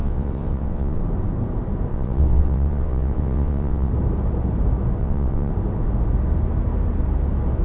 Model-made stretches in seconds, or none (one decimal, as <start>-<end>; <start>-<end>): 0.0-1.0; 1.9-3.9; 5.0-5.5